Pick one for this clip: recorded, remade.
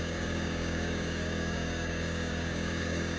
remade